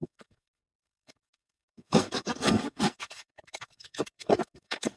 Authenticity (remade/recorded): remade